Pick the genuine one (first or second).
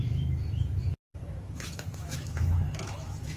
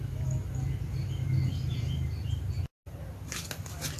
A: second